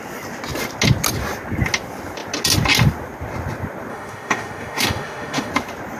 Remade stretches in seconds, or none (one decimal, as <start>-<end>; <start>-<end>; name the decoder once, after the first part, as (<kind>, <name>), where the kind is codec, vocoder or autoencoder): 3.9-5.5 (autoencoder, DAC-VAE)